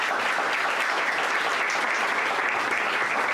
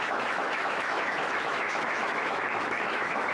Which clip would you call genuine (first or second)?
first